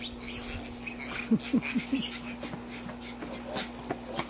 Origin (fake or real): real